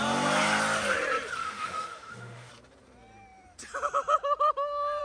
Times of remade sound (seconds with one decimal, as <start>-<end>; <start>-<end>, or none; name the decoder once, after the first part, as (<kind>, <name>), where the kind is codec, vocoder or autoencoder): 1.4-2.5 (autoencoder, DAC-VAE)